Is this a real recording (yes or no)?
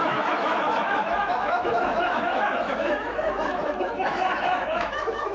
no